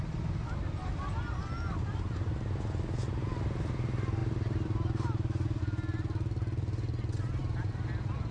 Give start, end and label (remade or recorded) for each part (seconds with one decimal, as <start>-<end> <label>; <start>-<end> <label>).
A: 0.0-4.2 recorded; 4.2-5.6 remade; 5.6-7.4 recorded; 7.4-8.3 remade

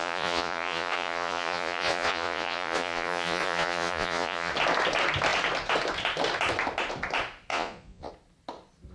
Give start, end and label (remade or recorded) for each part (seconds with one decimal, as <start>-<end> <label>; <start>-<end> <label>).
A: 0.0-4.5 remade; 4.5-7.5 recorded; 7.5-8.1 remade; 8.1-8.9 recorded

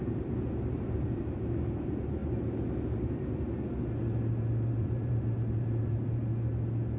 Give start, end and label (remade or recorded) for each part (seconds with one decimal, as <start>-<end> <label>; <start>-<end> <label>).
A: 0.0-2.2 remade; 2.2-4.7 recorded; 4.7-6.2 remade; 6.2-7.0 recorded

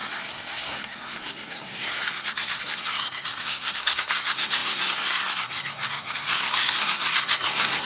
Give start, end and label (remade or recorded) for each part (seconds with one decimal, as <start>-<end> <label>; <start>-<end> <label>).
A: 0.0-7.8 remade

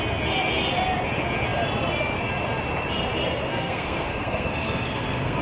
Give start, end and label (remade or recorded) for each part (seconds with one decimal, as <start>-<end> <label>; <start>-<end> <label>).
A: 0.0-3.5 recorded; 3.5-5.4 remade

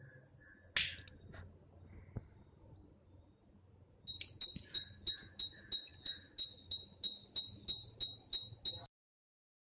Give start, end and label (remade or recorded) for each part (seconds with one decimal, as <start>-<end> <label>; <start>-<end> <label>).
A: 0.0-9.6 recorded